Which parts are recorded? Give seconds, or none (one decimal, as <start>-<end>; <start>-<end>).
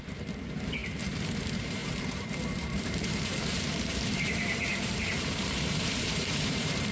none